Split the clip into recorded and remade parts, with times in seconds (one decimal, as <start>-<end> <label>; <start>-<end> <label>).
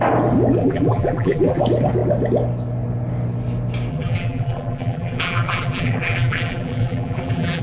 0.0-0.6 recorded; 0.6-1.6 remade; 1.6-3.9 recorded; 3.9-7.6 remade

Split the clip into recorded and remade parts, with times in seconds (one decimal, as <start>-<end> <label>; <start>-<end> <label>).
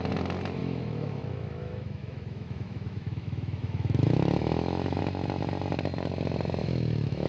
0.0-0.6 recorded; 0.6-5.0 remade; 5.0-6.6 recorded; 6.6-7.3 remade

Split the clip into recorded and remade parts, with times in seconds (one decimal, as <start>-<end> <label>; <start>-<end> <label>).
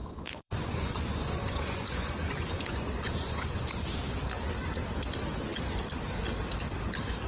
0.0-3.8 remade; 3.8-7.3 recorded